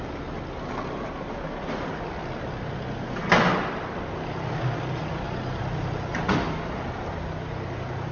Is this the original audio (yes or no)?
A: yes